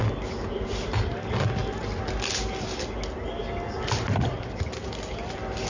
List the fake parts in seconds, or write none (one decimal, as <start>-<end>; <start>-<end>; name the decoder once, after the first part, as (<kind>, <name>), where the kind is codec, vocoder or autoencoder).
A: none